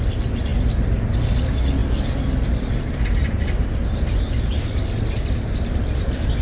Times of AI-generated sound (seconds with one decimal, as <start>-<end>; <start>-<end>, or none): none